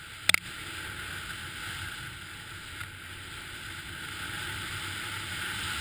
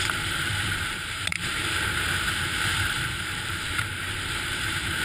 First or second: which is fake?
second